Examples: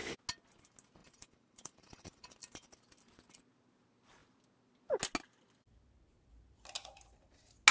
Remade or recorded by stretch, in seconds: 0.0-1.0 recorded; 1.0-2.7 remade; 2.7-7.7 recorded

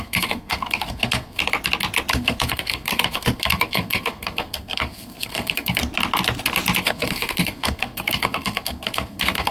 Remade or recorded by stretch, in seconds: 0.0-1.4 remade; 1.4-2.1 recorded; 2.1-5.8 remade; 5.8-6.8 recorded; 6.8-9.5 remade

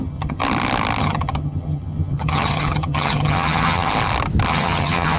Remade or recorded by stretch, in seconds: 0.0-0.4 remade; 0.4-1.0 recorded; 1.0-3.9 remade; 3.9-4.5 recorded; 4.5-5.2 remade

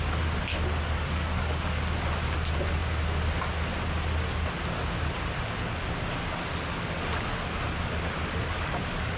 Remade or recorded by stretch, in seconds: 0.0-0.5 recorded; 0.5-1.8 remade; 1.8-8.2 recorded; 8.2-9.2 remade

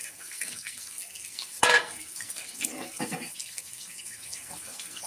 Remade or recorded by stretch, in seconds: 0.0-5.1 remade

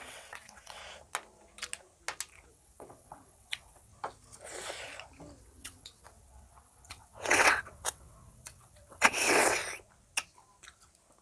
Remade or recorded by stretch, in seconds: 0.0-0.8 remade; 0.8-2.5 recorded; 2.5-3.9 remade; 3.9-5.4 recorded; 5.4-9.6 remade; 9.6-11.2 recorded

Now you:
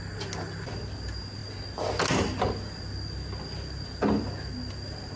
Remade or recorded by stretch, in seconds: 0.0-5.2 recorded